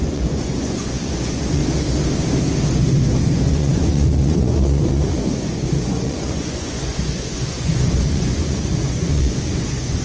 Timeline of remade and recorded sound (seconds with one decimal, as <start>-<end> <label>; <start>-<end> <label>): 0.0-1.6 remade; 1.6-3.2 recorded; 3.2-10.0 remade